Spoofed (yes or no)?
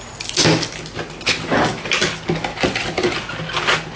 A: no